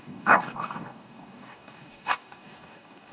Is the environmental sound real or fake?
fake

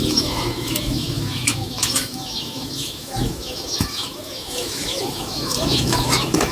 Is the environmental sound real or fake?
fake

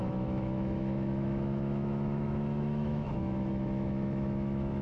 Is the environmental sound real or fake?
fake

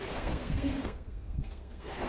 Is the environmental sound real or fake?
fake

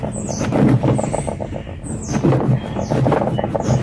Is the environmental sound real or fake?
real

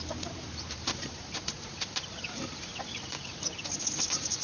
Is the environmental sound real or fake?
fake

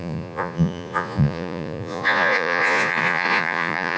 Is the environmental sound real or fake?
fake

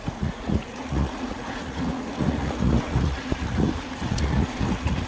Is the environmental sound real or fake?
fake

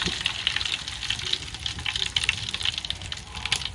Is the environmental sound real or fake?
real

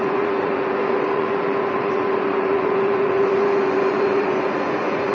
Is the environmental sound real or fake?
fake